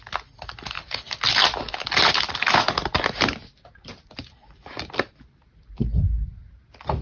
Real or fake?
real